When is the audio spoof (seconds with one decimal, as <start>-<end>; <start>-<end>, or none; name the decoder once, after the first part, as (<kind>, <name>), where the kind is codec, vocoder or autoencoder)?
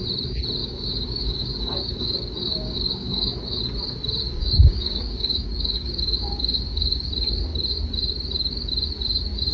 0.6-3.6 (codec, DAC); 4.4-7.1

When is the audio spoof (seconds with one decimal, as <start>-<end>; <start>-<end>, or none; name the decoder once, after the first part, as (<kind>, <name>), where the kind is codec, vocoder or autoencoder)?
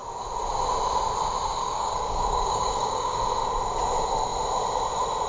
1.6-3.2 (codec, DAC)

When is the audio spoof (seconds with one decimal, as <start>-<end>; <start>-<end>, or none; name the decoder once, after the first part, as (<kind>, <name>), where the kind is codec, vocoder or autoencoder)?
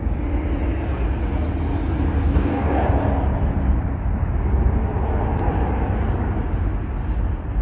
2.2-2.9 (codec, DAC)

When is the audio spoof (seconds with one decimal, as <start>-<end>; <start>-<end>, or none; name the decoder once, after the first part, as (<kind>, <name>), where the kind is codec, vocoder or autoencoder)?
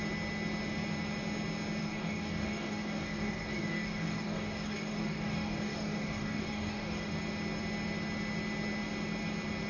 1.8-7.1 (codec, DAC)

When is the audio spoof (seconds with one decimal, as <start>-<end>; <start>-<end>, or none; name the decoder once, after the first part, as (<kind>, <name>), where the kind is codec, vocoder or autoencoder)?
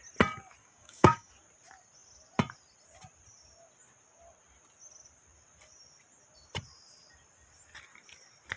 0.6-1.3 (codec, DAC)